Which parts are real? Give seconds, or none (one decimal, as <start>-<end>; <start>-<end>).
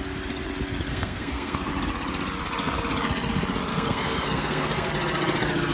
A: 0.0-0.9; 1.7-3.7; 4.9-5.7